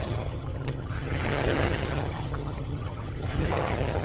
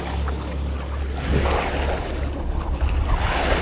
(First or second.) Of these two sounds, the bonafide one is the second